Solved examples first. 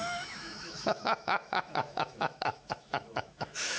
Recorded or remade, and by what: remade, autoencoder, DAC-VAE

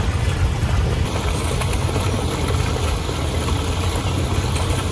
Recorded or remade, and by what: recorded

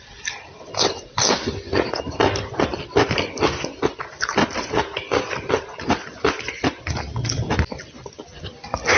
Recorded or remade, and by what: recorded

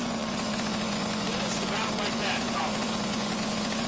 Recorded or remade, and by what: remade, vocoder, Vocos